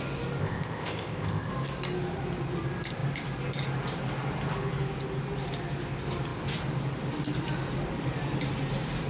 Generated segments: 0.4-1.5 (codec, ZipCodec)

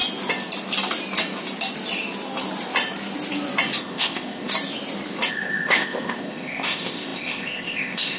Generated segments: 3.8-4.5 (codec, ZipCodec); 5.3-8.2

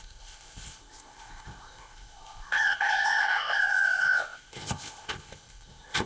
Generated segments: 0.0-6.1 (codec, ZipCodec)

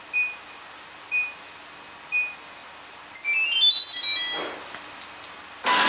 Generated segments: none

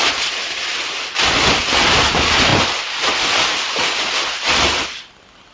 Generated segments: none